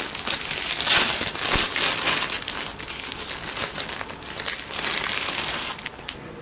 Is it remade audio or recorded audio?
recorded